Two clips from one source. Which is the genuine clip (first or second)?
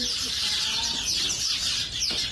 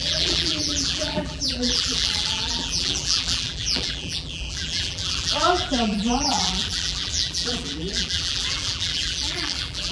first